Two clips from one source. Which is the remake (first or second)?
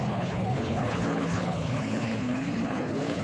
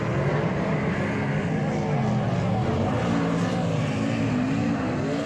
first